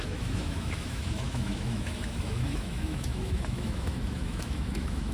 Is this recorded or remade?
remade